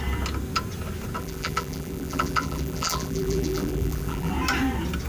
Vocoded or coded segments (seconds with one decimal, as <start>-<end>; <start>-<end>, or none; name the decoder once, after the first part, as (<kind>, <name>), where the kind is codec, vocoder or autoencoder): 1.2-4.3 (vocoder, BigVGAN v2)